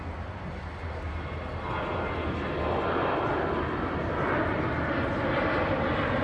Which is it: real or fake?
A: real